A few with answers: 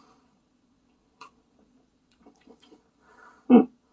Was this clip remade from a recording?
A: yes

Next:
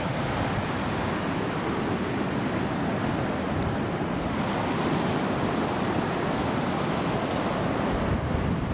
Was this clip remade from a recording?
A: no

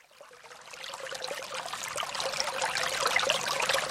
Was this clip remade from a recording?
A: no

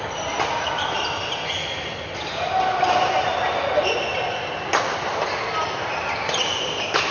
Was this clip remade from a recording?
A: no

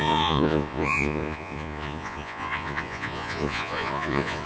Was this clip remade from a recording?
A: yes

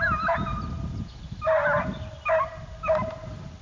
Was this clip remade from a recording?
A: no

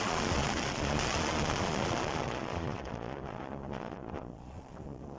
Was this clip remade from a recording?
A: yes